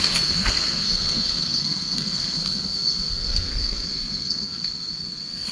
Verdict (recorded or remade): remade